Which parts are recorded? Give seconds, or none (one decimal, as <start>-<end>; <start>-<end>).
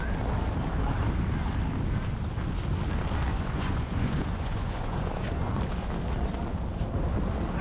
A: 0.0-3.3; 5.6-7.6